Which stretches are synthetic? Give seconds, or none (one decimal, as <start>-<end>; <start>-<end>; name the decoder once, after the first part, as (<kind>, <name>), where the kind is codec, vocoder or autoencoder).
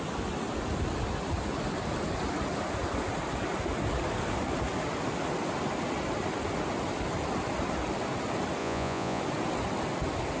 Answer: 8.6-9.2 (vocoder, Vocos)